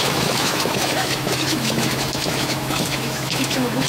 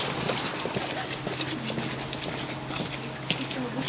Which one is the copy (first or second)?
first